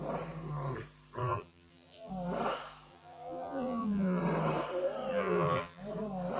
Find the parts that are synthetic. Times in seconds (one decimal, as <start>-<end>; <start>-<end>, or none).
1.2-2.1; 2.9-4.2; 5.1-5.8